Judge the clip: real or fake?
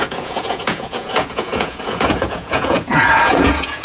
fake